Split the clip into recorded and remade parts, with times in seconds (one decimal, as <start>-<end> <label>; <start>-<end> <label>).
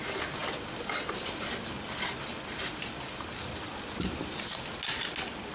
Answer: 0.0-5.5 recorded